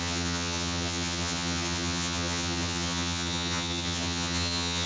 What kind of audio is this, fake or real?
fake